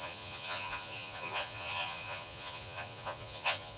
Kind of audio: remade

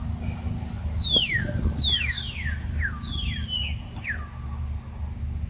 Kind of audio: recorded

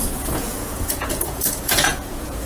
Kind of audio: remade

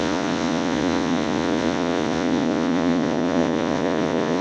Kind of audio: remade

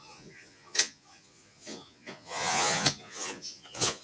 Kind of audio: remade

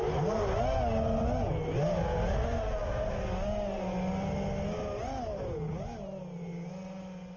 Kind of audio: recorded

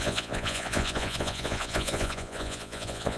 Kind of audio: remade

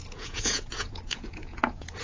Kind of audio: remade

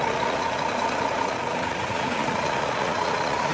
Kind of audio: remade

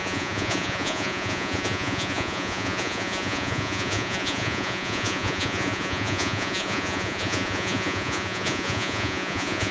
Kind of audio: remade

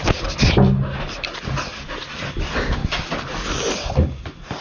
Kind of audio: recorded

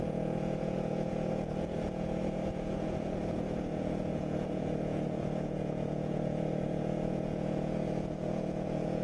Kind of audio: remade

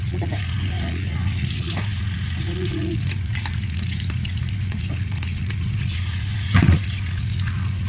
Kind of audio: remade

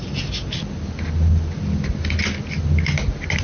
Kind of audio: recorded